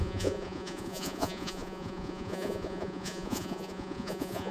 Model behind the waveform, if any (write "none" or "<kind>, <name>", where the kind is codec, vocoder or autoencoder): vocoder, Vocos